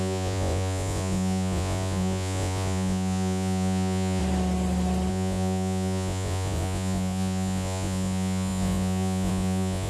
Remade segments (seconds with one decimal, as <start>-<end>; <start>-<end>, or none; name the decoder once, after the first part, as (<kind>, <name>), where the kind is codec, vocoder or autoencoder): 0.0-4.2 (vocoder, Vocos); 5.1-9.9